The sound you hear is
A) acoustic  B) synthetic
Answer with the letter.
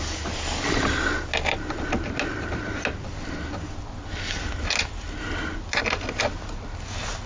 A